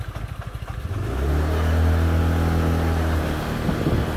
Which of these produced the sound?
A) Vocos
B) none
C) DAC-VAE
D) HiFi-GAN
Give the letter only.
B